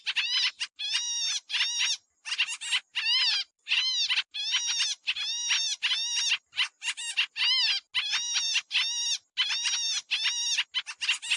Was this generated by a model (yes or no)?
no